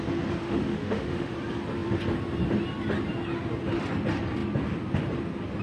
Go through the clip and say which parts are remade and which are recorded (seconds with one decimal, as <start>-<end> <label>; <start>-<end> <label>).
0.0-0.4 recorded; 0.4-1.3 remade; 1.3-5.6 recorded